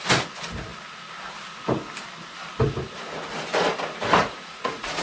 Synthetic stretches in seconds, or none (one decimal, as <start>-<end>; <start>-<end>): 4.2-5.0